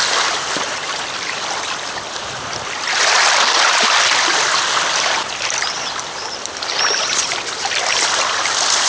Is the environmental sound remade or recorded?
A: remade